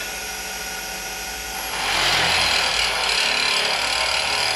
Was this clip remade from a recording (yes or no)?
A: no